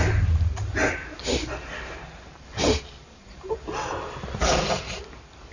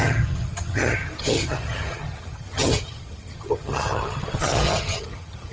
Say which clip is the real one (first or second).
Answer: first